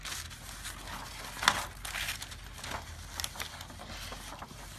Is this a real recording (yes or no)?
yes